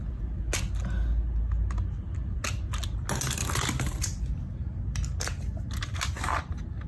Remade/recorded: recorded